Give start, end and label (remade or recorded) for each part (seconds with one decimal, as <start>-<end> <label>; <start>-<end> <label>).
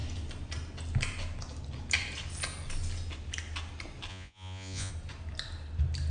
0.0-4.1 recorded; 4.1-4.9 remade; 4.9-6.1 recorded